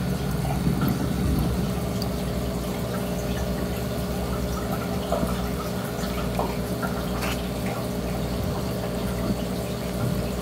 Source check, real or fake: real